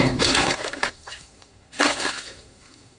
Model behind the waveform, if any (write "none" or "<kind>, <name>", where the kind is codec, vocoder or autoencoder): codec, SNAC